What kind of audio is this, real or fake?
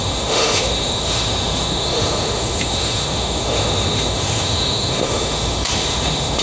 fake